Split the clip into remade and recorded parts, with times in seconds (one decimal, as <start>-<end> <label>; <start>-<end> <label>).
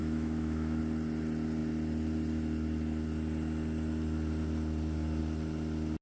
0.0-0.8 remade; 0.8-6.0 recorded